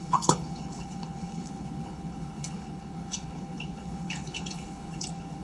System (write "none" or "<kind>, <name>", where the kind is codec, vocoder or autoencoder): codec, HILCodec